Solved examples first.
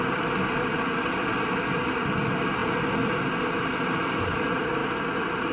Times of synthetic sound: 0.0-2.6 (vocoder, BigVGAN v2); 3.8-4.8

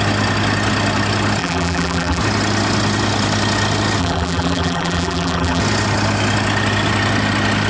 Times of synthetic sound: 1.4-2.2 (vocoder, BigVGAN v2); 4.0-5.6

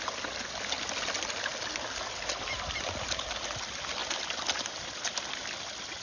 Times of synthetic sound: none

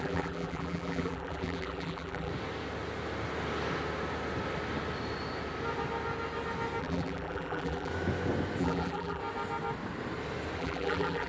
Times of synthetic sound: 0.0-2.3 (vocoder, BigVGAN v2); 6.8-7.9; 8.6-9.2; 10.6-11.3

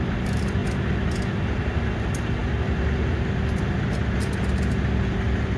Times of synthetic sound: 0.0-0.6 (vocoder, BigVGAN v2); 1.5-2.4